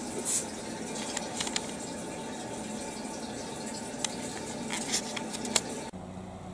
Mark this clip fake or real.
real